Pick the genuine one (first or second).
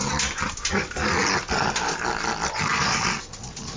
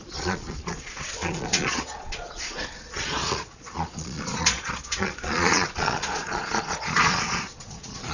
first